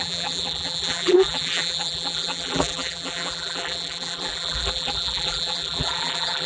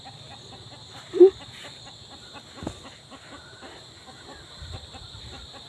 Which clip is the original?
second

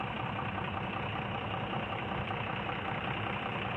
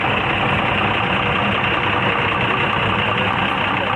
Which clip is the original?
second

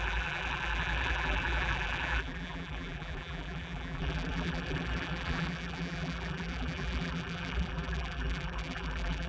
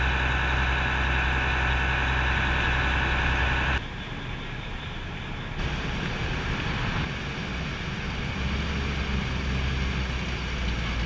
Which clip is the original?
second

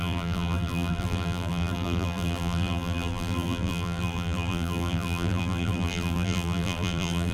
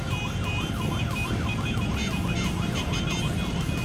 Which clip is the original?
second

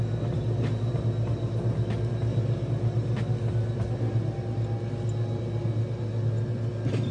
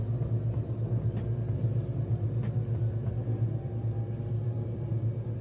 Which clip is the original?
first